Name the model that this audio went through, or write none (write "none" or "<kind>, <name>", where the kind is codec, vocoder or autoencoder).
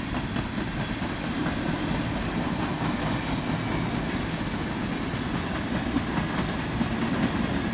none